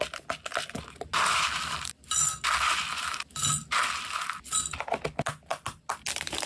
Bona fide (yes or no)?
yes